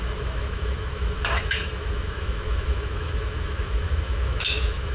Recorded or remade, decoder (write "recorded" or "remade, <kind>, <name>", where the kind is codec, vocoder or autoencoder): remade, autoencoder, DAC-VAE